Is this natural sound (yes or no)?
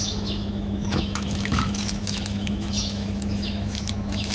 no